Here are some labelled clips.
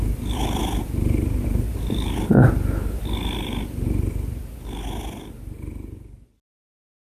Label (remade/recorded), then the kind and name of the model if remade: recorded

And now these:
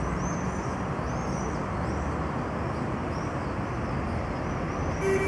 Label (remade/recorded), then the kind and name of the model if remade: recorded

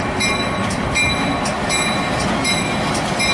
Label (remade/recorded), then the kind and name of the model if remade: recorded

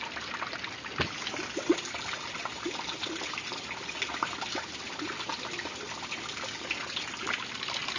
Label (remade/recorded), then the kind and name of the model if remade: recorded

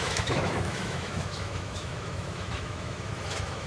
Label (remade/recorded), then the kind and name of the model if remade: remade, autoencoder, DAC-VAE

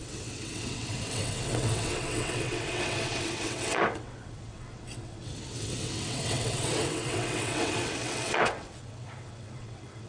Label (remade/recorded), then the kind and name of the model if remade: remade, vocoder, WaveNeXt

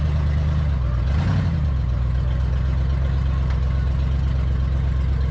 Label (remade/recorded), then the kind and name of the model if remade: recorded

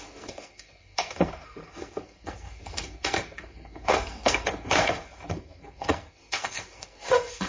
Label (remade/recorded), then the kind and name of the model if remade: remade, codec, SNAC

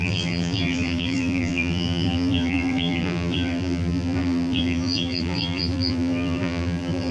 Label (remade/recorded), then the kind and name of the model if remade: remade, vocoder, BigVGAN v2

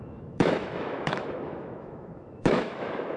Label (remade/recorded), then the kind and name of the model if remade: remade, autoencoder, DAC-VAE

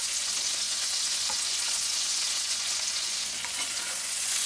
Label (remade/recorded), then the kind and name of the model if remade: remade, vocoder, Vocos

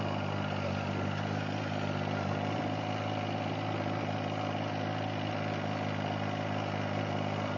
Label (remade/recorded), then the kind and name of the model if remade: recorded